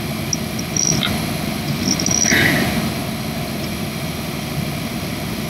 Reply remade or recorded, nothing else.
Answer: recorded